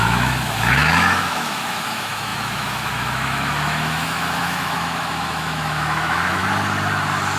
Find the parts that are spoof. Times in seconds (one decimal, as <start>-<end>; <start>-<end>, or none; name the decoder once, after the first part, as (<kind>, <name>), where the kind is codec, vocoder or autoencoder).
0.0-6.4 (autoencoder, DAC-VAE)